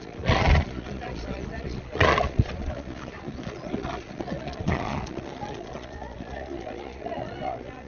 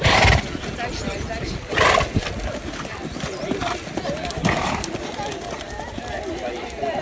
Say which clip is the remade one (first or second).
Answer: first